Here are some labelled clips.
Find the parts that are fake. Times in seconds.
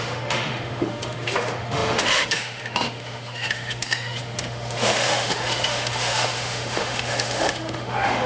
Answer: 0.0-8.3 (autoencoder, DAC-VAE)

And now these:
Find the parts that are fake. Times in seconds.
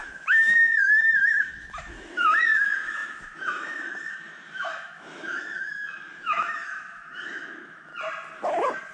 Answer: 0.0-7.9 (autoencoder, DAC-VAE)